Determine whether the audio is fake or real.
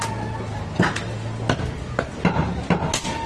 real